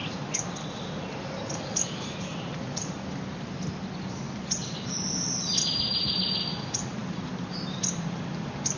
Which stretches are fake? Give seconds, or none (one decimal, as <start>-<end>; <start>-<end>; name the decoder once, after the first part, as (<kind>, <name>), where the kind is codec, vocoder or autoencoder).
0.0-3.6 (vocoder, BigVGAN v2); 4.6-5.6; 7.0-8.8